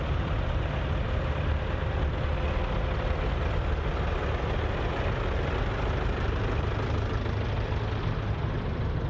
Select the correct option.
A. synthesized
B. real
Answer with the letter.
B